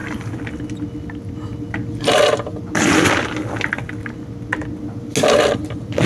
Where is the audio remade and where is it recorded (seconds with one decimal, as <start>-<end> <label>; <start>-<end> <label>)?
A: 0.0-6.1 recorded